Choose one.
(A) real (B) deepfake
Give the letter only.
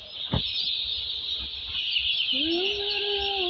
A